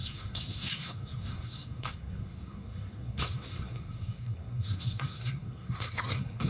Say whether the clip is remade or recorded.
remade